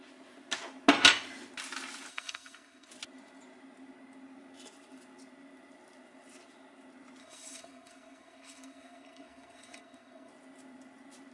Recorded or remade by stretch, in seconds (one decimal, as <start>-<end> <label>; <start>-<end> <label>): 0.0-2.1 recorded; 2.1-2.9 remade; 2.9-7.2 recorded; 7.2-10.3 remade; 10.3-11.3 recorded